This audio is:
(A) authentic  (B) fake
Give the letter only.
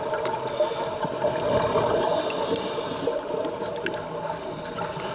A